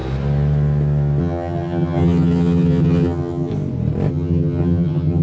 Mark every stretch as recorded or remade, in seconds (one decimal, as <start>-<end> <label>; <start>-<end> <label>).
0.0-1.2 recorded; 1.2-3.5 remade; 3.5-4.1 recorded; 4.1-5.2 remade